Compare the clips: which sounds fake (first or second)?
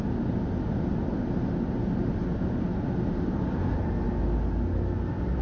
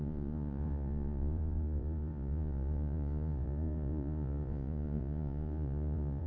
second